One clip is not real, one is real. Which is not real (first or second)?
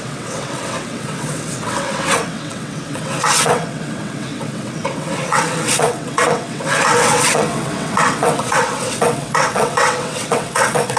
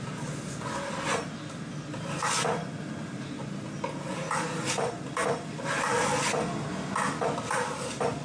first